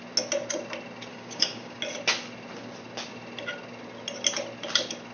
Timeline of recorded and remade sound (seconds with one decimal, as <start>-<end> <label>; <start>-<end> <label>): 0.0-1.1 recorded; 1.1-1.8 remade; 1.8-5.1 recorded